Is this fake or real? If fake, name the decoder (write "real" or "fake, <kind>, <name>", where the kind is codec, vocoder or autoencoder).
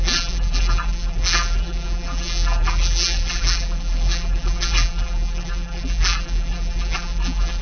fake, vocoder, BigVGAN v2